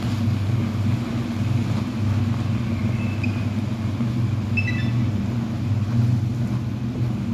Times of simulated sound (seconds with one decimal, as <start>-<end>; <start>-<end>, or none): none